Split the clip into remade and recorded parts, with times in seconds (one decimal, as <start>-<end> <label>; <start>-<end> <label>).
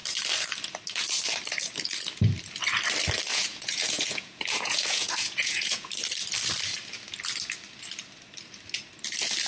0.0-3.3 recorded; 3.3-5.9 remade; 5.9-9.5 recorded